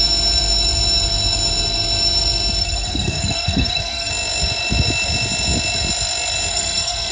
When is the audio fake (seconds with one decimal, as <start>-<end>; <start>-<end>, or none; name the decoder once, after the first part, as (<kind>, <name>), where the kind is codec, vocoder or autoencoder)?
2.6-4.1 (codec, SNAC); 6.5-7.1